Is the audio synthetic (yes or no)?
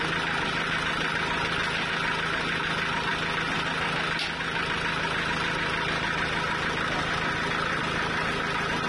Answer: no